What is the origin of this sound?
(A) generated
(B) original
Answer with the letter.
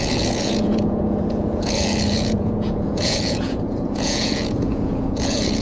A